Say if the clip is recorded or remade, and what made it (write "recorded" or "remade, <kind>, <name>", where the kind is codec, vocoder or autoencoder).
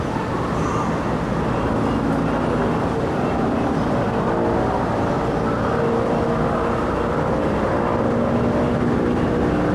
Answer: recorded